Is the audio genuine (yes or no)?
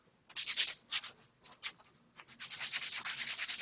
yes